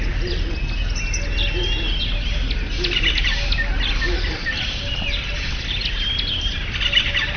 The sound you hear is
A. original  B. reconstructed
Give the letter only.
A